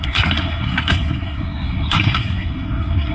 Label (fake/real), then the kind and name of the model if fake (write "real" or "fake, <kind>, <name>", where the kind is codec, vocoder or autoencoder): fake, codec, SNAC